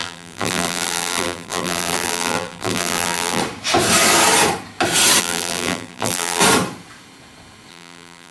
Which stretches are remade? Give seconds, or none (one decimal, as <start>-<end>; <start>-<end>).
0.0-3.4; 5.2-6.4; 7.7-8.3